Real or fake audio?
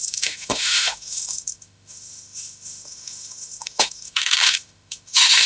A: fake